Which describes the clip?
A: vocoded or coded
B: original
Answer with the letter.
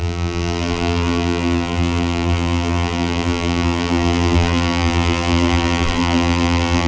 A